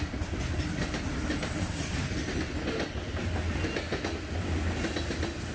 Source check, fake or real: real